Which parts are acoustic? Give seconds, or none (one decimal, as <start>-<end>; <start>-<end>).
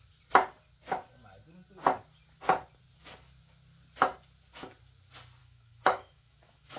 0.0-5.4